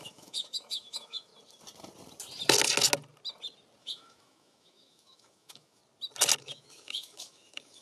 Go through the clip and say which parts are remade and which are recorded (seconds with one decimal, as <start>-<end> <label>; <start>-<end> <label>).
0.0-1.3 remade; 1.3-3.8 recorded; 3.8-5.8 remade; 5.8-6.4 recorded; 6.4-7.8 remade